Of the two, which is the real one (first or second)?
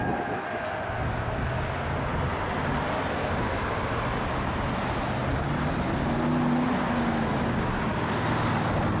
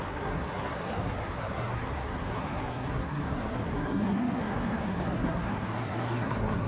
first